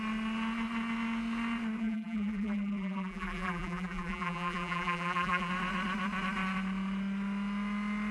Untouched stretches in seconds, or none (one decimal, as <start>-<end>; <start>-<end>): 0.0-1.8; 5.5-8.1